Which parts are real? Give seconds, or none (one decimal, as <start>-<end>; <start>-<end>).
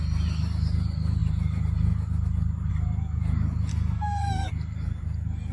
0.0-3.7; 4.5-5.5